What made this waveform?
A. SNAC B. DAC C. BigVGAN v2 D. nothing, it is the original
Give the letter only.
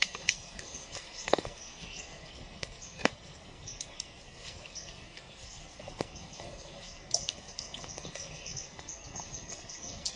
A